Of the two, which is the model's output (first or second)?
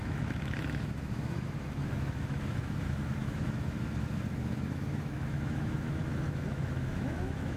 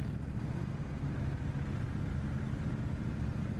first